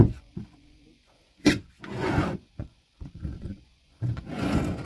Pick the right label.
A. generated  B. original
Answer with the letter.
A